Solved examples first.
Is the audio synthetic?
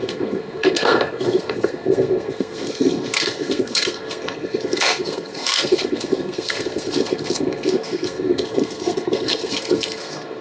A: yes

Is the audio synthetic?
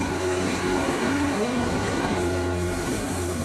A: yes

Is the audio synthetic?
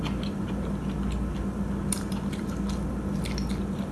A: no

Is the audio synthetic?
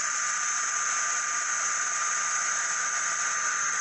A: no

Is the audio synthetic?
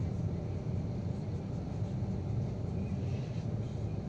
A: no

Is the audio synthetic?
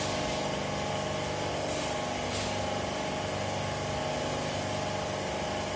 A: no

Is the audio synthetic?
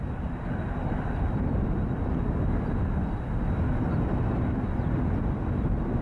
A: no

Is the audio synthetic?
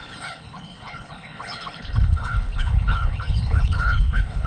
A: yes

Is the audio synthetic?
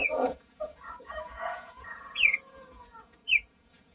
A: yes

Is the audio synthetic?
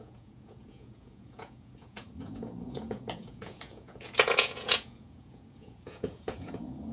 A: yes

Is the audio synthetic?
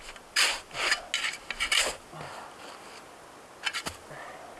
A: no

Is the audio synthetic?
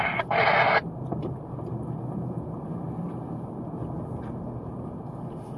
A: no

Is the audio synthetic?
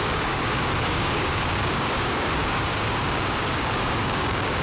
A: yes